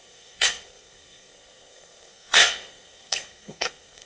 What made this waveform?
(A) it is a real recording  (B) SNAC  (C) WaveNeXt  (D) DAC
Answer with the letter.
B